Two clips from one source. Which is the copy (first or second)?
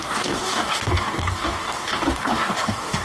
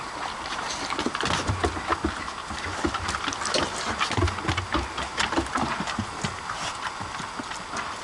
first